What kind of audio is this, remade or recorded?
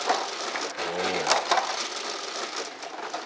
recorded